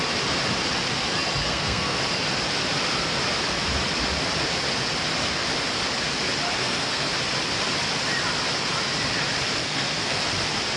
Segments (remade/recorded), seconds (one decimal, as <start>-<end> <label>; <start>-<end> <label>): 0.0-1.4 recorded; 1.4-2.0 remade; 2.0-6.6 recorded; 6.6-7.1 remade; 7.1-9.6 recorded; 9.6-10.2 remade; 10.2-10.8 recorded